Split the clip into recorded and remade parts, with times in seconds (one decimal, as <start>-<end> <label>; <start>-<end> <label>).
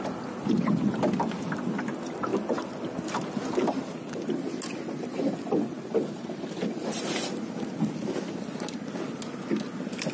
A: 0.0-10.1 recorded